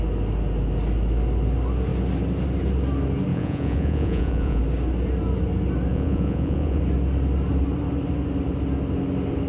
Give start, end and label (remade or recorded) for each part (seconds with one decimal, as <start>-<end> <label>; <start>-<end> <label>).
0.0-3.3 recorded; 3.3-4.6 remade; 4.6-5.9 recorded; 5.9-6.8 remade; 6.8-9.5 recorded